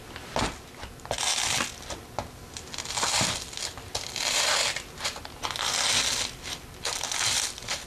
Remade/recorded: recorded